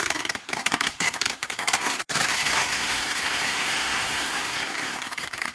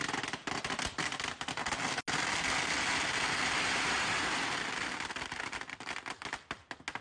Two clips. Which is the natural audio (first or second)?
second